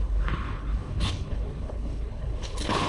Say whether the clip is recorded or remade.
remade